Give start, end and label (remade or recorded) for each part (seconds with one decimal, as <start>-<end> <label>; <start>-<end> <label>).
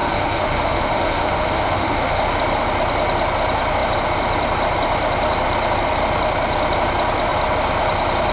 0.0-2.2 remade; 2.2-8.3 recorded